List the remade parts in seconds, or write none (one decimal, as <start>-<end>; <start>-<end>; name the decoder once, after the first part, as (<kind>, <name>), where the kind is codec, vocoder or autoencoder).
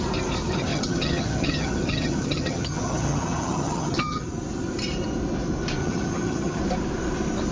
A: 0.7-4.3 (vocoder, HiFi-GAN); 5.8-6.6